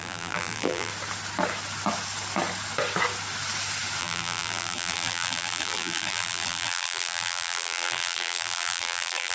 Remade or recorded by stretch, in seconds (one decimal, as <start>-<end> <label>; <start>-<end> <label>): 0.0-0.9 remade; 0.9-4.0 recorded; 4.0-9.3 remade